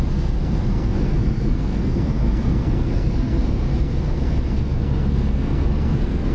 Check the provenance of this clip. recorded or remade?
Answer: remade